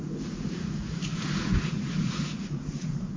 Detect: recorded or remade remade